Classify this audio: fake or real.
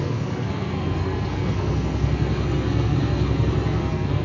fake